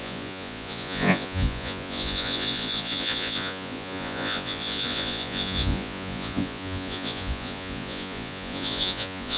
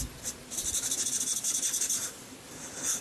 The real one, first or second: second